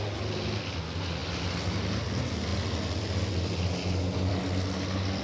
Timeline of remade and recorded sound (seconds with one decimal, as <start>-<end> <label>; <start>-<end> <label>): 0.0-5.2 recorded